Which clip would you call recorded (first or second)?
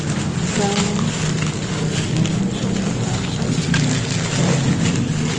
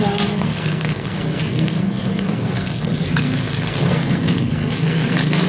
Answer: first